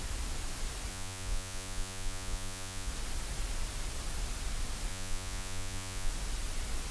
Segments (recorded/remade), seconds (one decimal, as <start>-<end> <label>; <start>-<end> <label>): 0.0-0.9 recorded; 0.9-2.9 remade; 2.9-4.9 recorded; 4.9-6.1 remade; 6.1-6.9 recorded